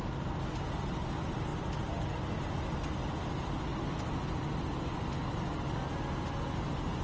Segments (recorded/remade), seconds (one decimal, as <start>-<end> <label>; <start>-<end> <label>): 0.0-7.0 remade